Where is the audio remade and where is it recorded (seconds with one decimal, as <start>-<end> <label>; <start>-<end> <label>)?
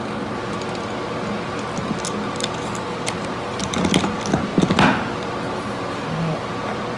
0.0-7.0 recorded